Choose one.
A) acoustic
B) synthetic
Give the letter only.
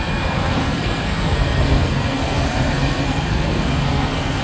B